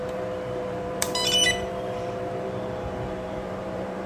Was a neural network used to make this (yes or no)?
yes